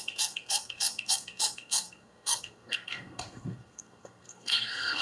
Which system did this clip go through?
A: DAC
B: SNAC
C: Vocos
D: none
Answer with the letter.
B